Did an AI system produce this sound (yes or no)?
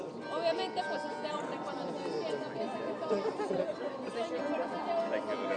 no